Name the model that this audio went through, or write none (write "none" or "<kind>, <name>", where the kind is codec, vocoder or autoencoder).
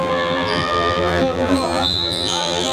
vocoder, BigVGAN v2